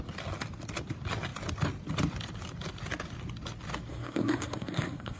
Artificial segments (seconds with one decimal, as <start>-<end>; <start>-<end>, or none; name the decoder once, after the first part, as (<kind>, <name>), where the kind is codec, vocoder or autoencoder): 3.9-5.2 (codec, SNAC)